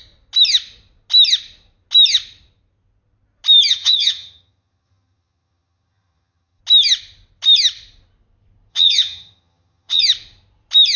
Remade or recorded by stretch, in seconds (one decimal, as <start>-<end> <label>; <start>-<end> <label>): 0.0-3.7 recorded; 3.7-6.6 remade; 6.6-8.7 recorded; 8.7-10.0 remade; 10.0-11.0 recorded